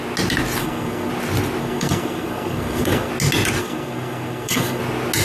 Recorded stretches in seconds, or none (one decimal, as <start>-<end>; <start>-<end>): 0.0-0.6; 1.1-1.6; 3.1-3.6; 4.8-5.2